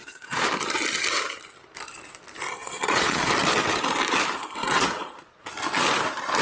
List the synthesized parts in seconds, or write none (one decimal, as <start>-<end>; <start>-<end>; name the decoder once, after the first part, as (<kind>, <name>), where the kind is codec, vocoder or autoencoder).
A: 0.0-0.5 (vocoder, Vocos); 2.6-3.3; 4.6-5.2